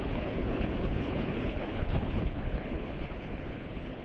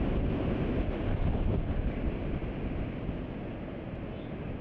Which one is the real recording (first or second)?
second